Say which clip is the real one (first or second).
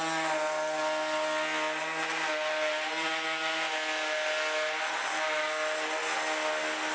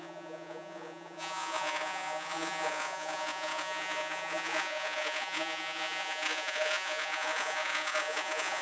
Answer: first